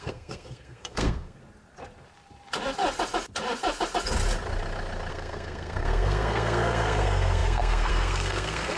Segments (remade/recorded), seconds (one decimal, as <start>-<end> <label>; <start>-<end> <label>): 0.0-1.4 remade; 1.4-5.1 recorded; 5.1-8.8 remade